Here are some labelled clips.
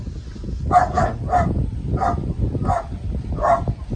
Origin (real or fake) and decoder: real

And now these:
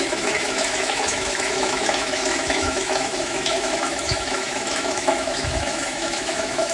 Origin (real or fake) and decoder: fake, autoencoder, DAC-VAE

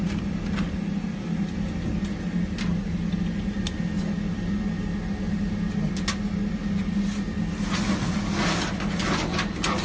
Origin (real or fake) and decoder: real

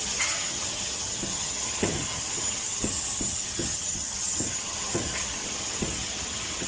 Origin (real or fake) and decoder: fake, vocoder, HiFi-GAN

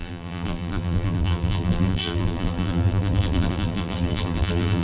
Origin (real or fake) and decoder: fake, vocoder, BigVGAN v2